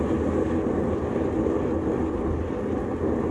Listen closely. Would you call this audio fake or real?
real